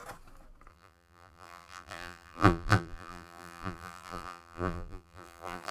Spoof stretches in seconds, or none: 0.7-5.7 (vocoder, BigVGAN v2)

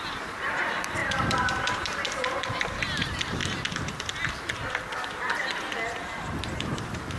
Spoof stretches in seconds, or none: 0.0-3.4 (vocoder, BigVGAN v2); 6.6-7.2

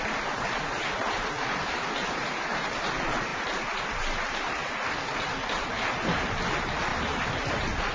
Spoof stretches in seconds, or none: 1.0-2.7 (vocoder, BigVGAN v2); 4.6-5.7; 6.9-7.5